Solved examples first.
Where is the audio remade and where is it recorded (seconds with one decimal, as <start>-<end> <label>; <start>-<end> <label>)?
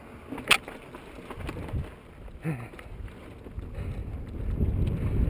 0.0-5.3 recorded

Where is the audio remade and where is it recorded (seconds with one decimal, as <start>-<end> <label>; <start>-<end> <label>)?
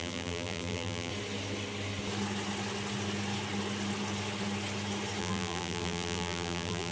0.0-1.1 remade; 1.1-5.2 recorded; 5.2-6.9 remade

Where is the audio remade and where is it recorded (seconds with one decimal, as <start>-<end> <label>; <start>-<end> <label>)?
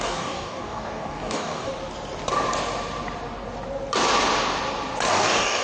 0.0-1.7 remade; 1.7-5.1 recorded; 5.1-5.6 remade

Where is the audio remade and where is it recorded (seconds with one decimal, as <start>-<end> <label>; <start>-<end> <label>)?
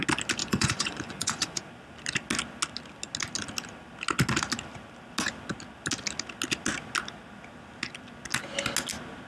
0.0-0.4 recorded; 0.4-1.6 remade; 1.6-9.3 recorded